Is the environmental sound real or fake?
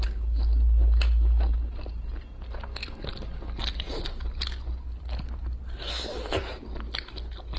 real